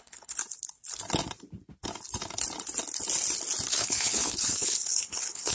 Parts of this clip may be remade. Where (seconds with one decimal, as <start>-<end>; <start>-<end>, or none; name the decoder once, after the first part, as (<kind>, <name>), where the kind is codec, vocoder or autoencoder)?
0.0-0.4 (codec, HILCodec); 3.7-5.5